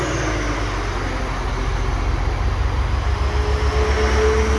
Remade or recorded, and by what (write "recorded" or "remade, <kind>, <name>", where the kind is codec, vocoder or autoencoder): recorded